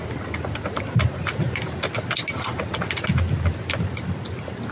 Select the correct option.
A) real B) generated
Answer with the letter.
A